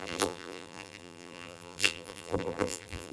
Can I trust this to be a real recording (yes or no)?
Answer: no